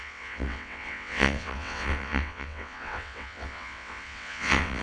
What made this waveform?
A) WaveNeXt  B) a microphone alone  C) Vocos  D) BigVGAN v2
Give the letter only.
A